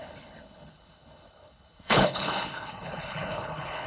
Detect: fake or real fake